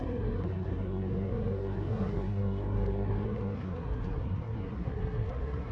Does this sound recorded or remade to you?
remade